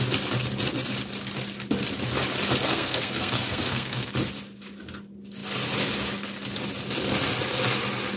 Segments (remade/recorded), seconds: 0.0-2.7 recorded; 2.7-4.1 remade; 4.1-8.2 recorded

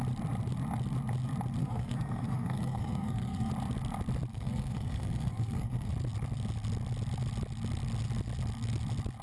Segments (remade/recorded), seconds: 0.0-1.6 recorded; 1.6-3.5 remade; 3.5-4.3 recorded; 4.3-5.9 remade; 5.9-9.2 recorded

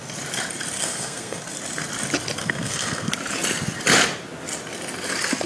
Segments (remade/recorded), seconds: 0.0-0.8 recorded; 0.8-1.4 remade; 1.4-2.4 recorded; 2.4-3.1 remade; 3.1-5.5 recorded